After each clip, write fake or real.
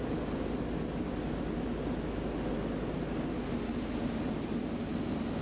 real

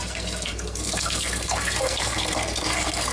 fake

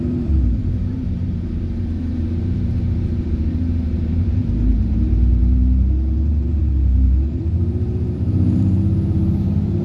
fake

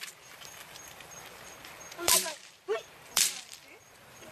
fake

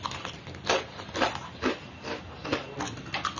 real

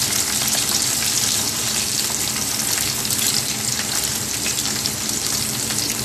real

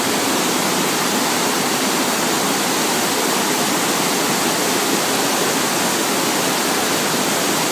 real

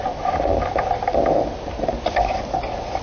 real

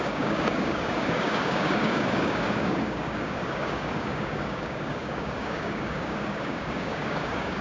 fake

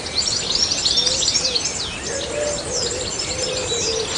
real